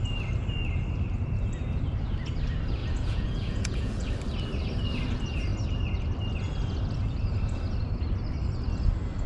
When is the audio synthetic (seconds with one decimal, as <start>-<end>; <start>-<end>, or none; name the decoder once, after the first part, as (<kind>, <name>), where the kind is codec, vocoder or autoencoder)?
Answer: 2.8-4.1 (vocoder, Vocos)